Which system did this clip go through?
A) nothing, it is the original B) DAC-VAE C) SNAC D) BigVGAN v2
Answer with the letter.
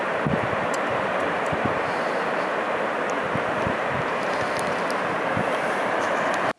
D